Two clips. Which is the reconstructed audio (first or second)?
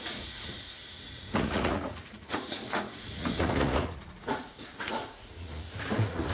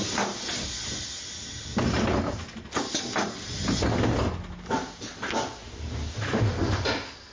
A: first